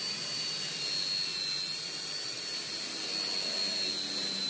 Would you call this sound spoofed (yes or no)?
no